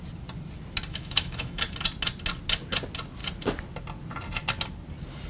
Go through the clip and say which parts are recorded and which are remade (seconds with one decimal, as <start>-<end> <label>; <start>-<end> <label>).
0.0-0.9 recorded; 0.9-1.6 remade; 1.6-5.3 recorded